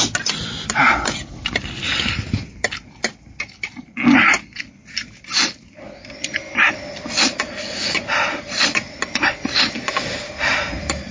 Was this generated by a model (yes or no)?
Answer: no